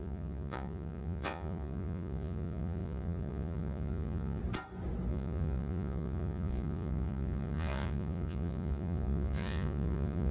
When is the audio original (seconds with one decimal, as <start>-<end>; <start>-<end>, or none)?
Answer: 4.4-5.1